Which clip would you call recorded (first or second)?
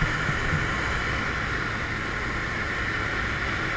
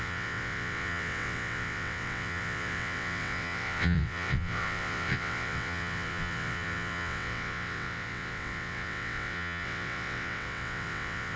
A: first